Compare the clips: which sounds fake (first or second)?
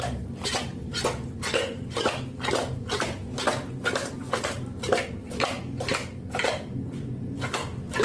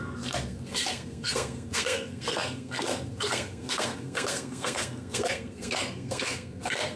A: second